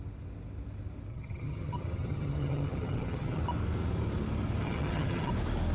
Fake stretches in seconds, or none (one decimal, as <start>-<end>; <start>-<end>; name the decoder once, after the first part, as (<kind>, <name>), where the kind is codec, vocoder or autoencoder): 1.1-3.4 (vocoder, HiFi-GAN); 4.6-5.3